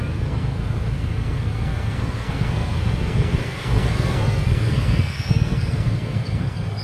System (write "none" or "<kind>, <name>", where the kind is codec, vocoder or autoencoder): codec, SNAC